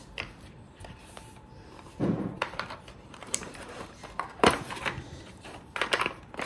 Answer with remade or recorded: remade